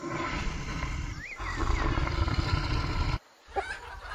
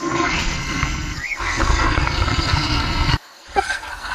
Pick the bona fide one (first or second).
first